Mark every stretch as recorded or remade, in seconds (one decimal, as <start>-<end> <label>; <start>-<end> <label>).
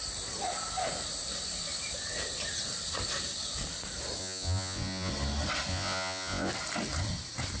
0.0-4.2 recorded; 4.2-5.1 remade; 5.1-5.7 recorded; 5.7-6.5 remade; 6.5-7.6 recorded